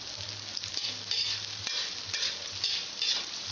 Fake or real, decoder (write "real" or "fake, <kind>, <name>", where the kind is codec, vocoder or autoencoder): real